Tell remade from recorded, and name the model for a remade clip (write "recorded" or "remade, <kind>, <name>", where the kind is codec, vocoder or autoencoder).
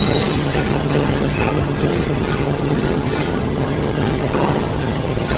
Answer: remade, vocoder, HiFi-GAN